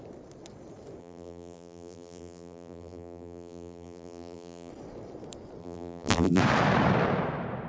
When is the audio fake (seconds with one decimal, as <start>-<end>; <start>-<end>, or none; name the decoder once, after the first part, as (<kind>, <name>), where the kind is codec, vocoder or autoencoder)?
1.0-4.7 (vocoder, BigVGAN v2); 5.6-6.4